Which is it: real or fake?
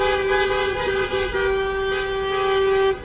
real